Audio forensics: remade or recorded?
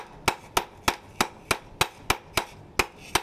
recorded